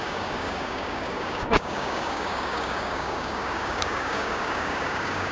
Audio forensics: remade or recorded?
remade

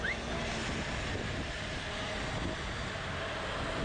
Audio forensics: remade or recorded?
recorded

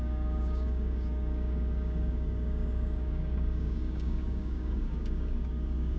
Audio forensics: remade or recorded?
remade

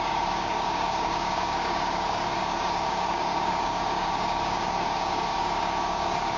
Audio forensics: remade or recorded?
remade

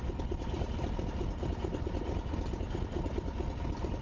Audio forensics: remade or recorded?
recorded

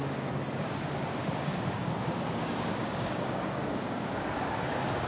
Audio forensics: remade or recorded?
remade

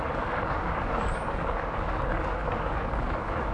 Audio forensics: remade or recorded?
remade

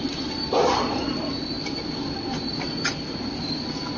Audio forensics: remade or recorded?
recorded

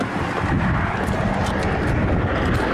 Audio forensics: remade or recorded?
recorded